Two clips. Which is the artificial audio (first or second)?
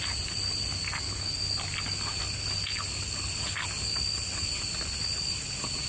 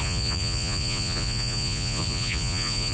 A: second